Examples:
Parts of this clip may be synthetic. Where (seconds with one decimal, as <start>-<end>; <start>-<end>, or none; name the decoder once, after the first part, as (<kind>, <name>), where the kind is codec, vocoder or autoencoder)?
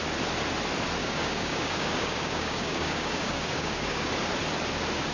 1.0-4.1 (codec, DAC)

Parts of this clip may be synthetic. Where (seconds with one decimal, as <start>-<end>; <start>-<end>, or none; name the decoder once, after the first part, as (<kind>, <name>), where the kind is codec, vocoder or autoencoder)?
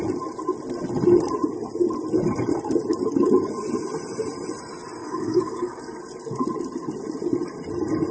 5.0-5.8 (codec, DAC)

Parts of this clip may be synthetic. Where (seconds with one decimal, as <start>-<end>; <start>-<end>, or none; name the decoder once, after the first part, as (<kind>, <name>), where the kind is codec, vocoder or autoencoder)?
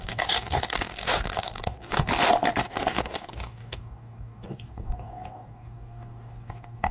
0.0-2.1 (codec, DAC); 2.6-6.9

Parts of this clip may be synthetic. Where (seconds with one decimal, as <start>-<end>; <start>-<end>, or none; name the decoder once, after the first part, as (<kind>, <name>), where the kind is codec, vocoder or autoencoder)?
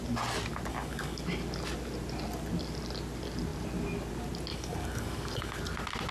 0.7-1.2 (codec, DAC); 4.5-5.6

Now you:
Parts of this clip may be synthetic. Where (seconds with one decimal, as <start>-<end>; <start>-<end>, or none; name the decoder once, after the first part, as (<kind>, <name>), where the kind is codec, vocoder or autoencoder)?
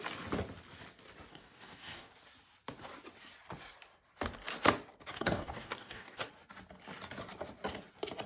1.3-2.1 (codec, DAC); 5.1-6.3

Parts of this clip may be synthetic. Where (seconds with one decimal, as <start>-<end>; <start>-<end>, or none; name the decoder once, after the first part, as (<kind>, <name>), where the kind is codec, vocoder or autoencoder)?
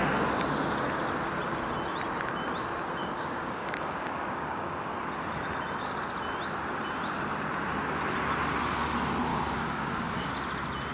3.0-4.9 (codec, DAC); 9.3-10.3